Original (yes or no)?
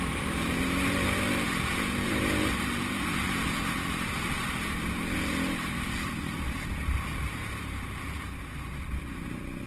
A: no